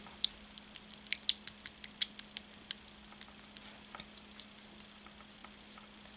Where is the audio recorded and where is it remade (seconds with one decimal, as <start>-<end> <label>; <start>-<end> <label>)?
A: 0.0-6.2 recorded